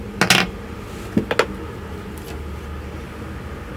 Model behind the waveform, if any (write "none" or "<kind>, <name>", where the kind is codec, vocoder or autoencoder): none